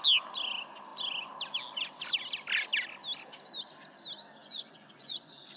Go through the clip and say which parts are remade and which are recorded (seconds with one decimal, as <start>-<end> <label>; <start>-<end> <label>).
0.0-4.4 recorded; 4.4-5.6 remade